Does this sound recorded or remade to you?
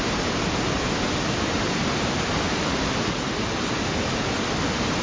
recorded